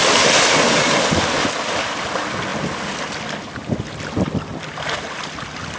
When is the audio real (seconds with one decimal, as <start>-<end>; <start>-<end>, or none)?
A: 0.0-5.8